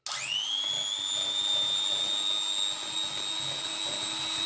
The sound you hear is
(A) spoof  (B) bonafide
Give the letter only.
B